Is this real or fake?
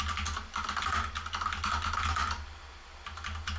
real